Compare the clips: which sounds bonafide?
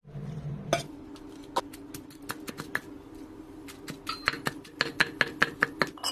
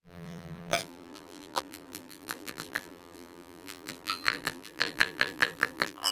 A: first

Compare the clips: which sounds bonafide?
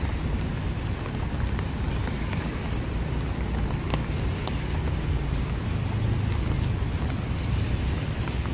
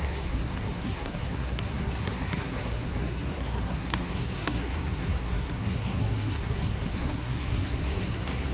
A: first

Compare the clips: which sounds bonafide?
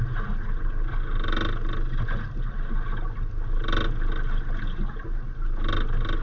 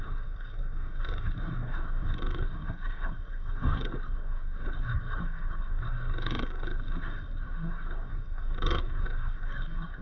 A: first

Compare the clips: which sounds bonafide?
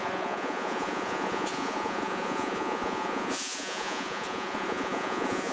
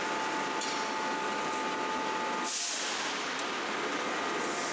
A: second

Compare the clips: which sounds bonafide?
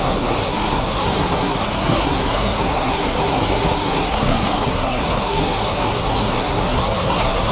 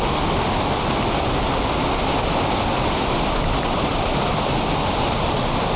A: second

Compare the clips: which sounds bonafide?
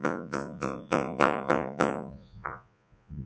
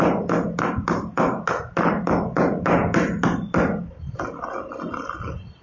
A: second